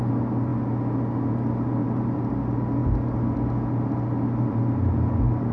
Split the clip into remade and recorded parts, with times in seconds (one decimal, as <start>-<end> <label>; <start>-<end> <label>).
0.0-1.8 recorded; 1.8-2.3 remade; 2.3-5.5 recorded